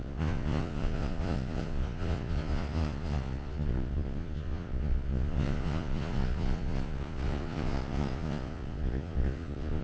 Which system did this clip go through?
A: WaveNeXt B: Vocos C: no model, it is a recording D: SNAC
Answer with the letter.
B